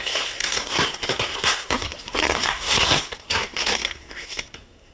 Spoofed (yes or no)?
yes